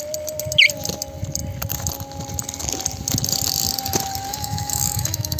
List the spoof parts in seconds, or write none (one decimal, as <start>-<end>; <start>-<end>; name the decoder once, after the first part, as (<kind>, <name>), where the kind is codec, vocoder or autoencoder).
4.3-5.4 (autoencoder, DAC-VAE)